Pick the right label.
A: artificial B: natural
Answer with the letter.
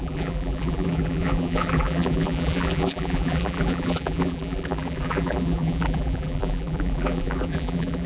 A